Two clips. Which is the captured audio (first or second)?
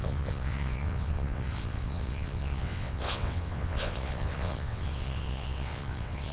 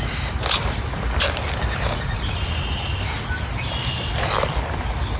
second